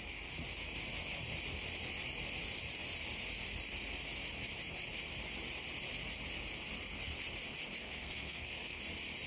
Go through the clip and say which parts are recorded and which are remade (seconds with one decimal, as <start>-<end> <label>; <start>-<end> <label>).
0.0-7.8 recorded; 7.8-8.8 remade; 8.8-9.3 recorded